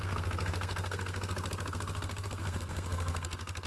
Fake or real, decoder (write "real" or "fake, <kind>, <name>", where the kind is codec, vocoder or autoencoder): fake, codec, SNAC